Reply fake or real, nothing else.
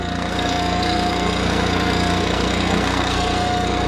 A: fake